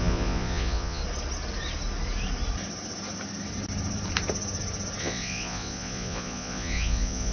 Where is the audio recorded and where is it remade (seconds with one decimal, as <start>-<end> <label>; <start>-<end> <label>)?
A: 0.0-1.0 remade; 1.0-5.0 recorded; 5.0-7.3 remade